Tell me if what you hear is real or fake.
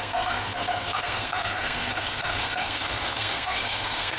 fake